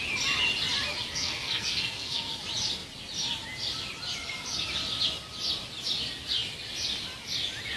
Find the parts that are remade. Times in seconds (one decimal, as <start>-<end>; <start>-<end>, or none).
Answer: 1.1-2.3

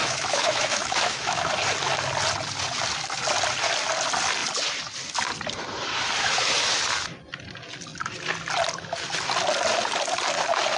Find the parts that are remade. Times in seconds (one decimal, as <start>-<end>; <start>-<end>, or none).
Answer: 0.0-1.5

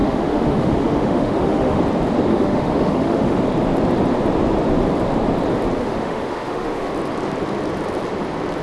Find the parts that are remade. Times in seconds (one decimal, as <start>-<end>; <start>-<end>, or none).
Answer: 0.0-1.8; 2.3-3.4; 5.8-6.9

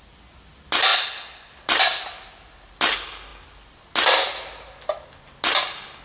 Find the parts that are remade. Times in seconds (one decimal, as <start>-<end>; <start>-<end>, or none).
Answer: none

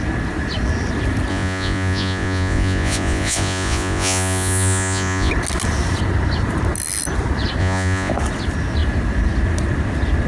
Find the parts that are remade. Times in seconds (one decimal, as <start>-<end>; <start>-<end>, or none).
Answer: 1.3-5.3; 7.6-8.1

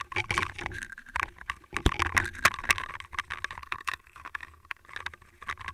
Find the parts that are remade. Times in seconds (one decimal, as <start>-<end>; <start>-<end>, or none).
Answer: 3.6-4.8